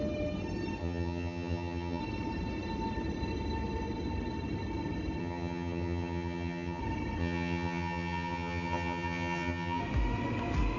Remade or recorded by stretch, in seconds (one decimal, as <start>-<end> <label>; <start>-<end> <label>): 0.0-0.8 recorded; 0.8-2.0 remade; 2.0-5.2 recorded; 5.2-6.8 remade; 6.8-7.2 recorded; 7.2-9.8 remade; 9.8-10.8 recorded